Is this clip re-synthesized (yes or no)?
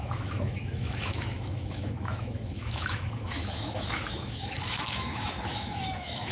yes